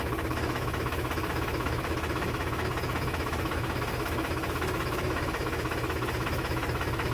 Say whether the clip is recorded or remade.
remade